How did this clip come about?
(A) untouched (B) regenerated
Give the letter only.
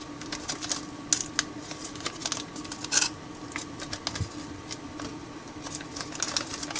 A